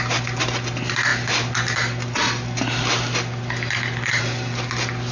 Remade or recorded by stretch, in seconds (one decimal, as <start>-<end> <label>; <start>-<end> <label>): 0.0-5.1 recorded